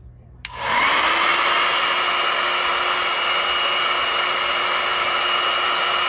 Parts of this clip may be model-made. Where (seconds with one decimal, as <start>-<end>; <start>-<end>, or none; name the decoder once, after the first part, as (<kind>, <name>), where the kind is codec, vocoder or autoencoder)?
none